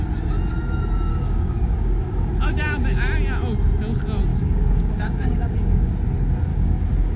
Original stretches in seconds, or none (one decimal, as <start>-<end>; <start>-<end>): 0.0-1.1; 2.3-4.3; 5.9-6.5

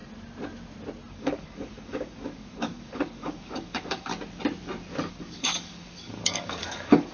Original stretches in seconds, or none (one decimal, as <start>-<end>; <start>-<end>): 0.0-1.1; 4.1-5.1

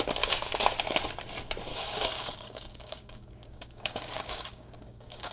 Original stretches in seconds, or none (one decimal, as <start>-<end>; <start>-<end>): 0.0-1.7

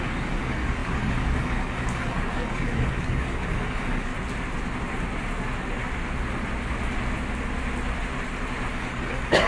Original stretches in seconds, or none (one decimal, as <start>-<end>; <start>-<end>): 4.1-8.7

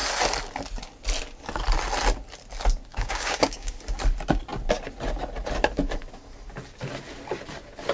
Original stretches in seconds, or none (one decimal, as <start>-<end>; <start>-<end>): 0.0-2.9; 3.7-7.9

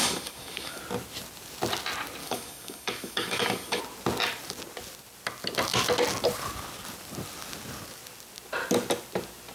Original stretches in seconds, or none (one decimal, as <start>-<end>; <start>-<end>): 0.8-2.2; 3.8-9.5

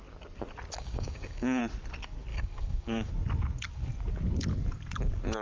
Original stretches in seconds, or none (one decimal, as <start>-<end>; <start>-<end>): 0.0-0.8; 1.6-2.3; 3.1-5.4